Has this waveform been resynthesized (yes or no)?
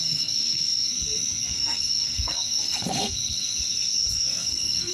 yes